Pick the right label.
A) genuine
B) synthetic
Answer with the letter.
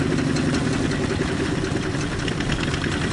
A